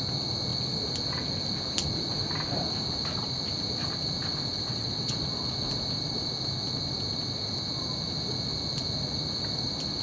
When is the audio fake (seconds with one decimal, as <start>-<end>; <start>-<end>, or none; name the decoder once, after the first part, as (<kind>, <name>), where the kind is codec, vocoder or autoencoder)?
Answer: 4.5-5.1 (vocoder, WaveNeXt)